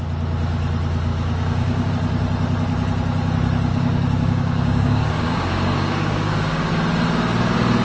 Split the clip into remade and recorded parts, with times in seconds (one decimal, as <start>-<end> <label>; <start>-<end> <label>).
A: 0.0-1.1 recorded; 1.1-1.9 remade; 1.9-3.7 recorded; 3.7-6.7 remade; 6.7-7.8 recorded

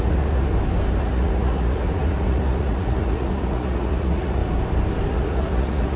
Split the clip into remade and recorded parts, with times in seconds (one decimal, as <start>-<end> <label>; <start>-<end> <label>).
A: 0.0-0.5 remade; 0.5-1.0 recorded; 1.0-4.4 remade; 4.4-5.1 recorded; 5.1-6.0 remade

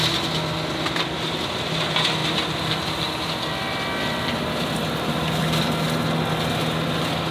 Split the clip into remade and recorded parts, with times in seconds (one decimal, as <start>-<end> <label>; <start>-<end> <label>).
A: 0.0-7.3 recorded

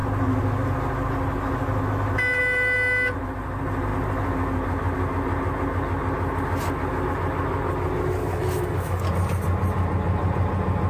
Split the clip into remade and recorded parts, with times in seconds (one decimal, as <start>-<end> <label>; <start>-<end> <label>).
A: 0.0-8.2 recorded; 8.2-9.0 remade; 9.0-10.9 recorded

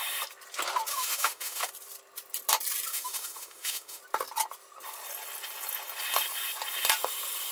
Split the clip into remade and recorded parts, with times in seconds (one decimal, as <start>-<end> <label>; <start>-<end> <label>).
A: 0.0-0.9 recorded; 0.9-1.7 remade; 1.7-2.9 recorded; 2.9-4.0 remade; 4.0-7.5 recorded

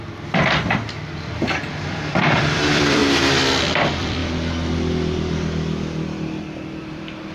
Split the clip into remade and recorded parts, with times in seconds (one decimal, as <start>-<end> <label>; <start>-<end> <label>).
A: 0.0-3.0 remade; 3.0-3.8 recorded; 3.8-4.2 remade; 4.2-6.4 recorded; 6.4-7.3 remade

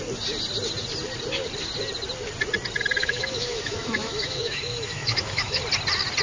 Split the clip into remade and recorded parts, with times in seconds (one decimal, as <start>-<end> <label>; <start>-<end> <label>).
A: 0.0-3.0 recorded; 3.0-5.6 remade; 5.6-6.2 recorded